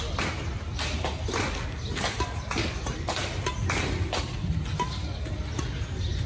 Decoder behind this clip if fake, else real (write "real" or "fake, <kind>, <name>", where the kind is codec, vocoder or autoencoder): real